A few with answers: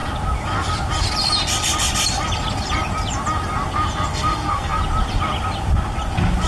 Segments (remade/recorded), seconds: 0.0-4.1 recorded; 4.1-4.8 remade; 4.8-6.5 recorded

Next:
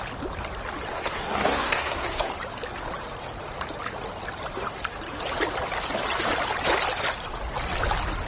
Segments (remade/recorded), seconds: 0.0-0.9 recorded; 0.9-2.3 remade; 2.3-8.3 recorded

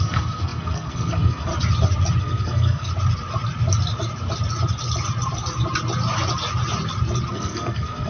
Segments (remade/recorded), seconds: 0.0-1.5 remade; 1.5-2.2 recorded; 2.2-2.9 remade; 2.9-7.3 recorded; 7.3-8.1 remade

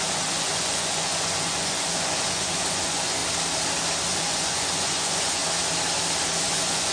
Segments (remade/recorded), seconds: 0.0-3.2 remade; 3.2-4.1 recorded; 4.1-5.4 remade; 5.4-6.4 recorded; 6.4-6.9 remade

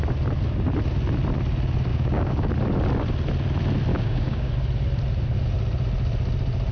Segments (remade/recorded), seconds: 0.0-1.9 recorded; 1.9-2.5 remade; 2.5-3.9 recorded; 3.9-4.5 remade; 4.5-6.7 recorded